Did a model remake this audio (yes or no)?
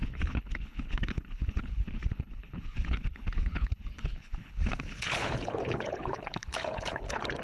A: yes